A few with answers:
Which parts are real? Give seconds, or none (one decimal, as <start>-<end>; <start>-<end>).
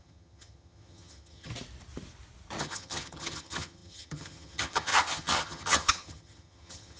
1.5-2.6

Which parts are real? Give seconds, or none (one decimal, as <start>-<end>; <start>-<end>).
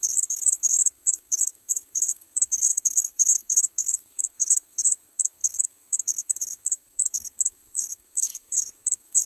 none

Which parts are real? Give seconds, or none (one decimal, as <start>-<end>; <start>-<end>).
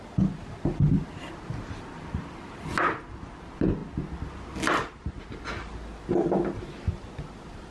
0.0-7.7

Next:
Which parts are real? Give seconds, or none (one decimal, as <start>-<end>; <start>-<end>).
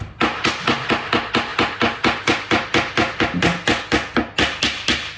0.0-5.2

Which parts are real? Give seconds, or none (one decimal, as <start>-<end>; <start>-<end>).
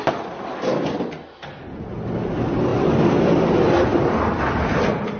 0.0-2.7; 3.5-3.9; 4.8-5.2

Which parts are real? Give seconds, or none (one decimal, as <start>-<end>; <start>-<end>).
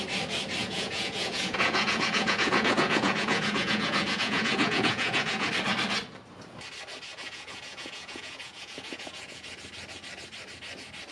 0.0-0.6; 5.5-7.1; 9.5-11.1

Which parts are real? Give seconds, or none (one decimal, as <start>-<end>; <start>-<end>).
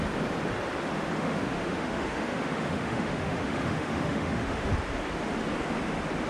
0.0-0.9; 4.7-6.3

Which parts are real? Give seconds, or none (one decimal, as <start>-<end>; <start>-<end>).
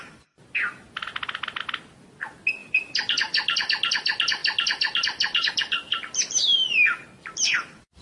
0.0-8.0